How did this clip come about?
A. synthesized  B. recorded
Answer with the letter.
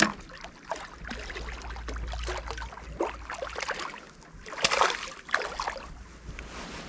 B